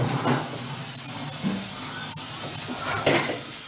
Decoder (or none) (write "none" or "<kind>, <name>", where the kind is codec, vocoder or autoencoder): none